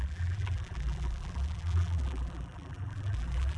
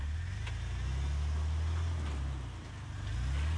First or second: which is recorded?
second